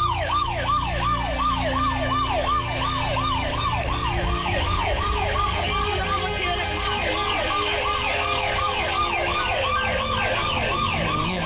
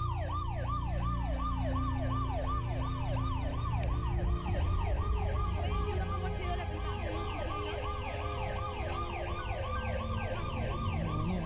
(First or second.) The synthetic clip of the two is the first